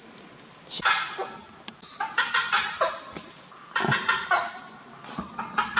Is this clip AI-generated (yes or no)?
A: no